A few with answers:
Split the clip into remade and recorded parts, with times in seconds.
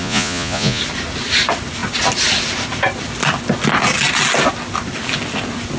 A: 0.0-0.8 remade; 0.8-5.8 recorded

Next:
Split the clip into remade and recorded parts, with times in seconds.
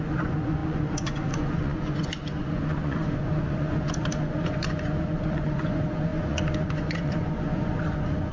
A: 0.0-8.3 remade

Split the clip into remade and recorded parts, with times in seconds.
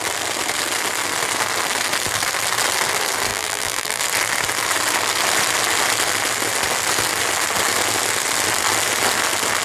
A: 0.0-3.3 recorded; 3.3-4.0 remade; 4.0-9.6 recorded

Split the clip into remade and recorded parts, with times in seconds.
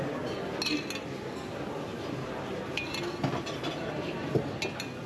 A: 0.0-5.1 recorded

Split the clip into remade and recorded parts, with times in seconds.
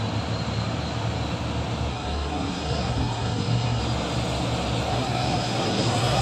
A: 0.0-1.9 recorded; 1.9-3.8 remade; 3.8-4.9 recorded; 4.9-6.2 remade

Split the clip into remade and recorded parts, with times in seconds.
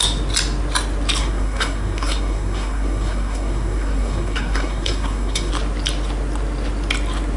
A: 0.0-1.2 recorded; 1.2-5.5 remade; 5.5-7.4 recorded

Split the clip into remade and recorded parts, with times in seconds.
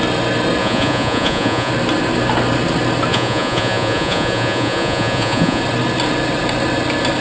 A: 0.0-0.6 recorded; 0.6-1.7 remade; 1.7-3.1 recorded; 3.1-5.6 remade; 5.6-7.2 recorded